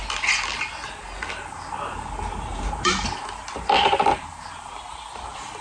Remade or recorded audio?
recorded